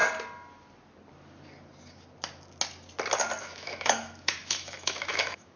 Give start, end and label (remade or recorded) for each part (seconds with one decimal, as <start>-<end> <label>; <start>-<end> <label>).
0.0-3.4 recorded; 3.4-5.6 remade

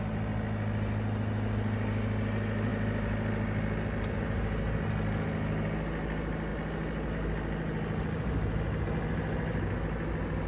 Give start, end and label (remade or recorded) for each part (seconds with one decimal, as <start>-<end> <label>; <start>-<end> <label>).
0.0-10.5 recorded

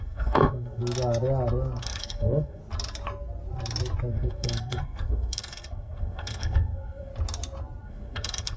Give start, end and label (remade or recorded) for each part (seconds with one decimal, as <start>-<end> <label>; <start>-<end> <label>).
0.0-0.8 remade; 0.8-1.8 recorded; 1.8-2.6 remade; 2.6-4.1 recorded; 4.1-7.1 remade; 7.1-7.8 recorded; 7.8-8.6 remade

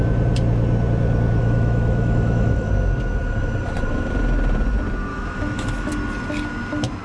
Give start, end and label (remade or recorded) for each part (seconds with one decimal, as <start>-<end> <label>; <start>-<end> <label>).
0.0-1.4 recorded; 1.4-2.7 remade; 2.7-5.1 recorded; 5.1-5.9 remade; 5.9-7.0 recorded

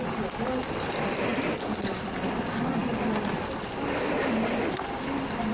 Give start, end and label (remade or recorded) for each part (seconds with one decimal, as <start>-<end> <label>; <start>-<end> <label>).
0.0-5.5 recorded

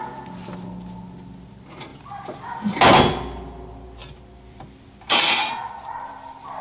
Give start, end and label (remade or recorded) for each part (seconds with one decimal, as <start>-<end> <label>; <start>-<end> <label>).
0.0-1.9 recorded; 1.9-2.9 remade; 2.9-4.0 recorded; 4.0-6.6 remade

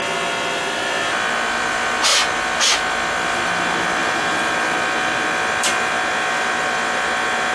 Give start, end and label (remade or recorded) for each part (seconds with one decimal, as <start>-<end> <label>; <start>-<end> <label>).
0.0-7.5 recorded

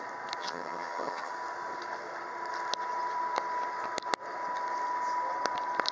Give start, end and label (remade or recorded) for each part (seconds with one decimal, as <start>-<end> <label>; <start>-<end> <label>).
0.0-0.4 recorded; 0.4-1.3 remade; 1.3-5.9 recorded